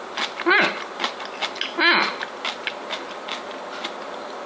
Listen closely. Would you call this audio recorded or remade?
recorded